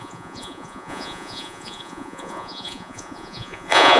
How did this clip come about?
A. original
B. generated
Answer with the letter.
B